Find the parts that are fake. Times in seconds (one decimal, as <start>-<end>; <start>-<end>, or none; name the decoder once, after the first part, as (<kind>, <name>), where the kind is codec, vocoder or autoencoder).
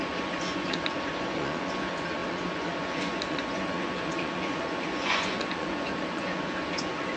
0.0-7.2 (vocoder, Vocos)